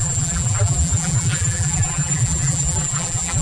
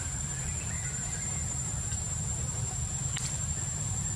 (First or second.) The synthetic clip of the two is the first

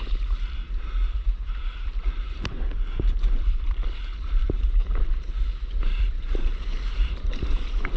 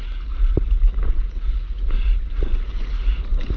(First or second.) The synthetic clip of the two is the first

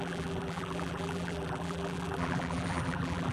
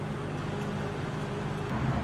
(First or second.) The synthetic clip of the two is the first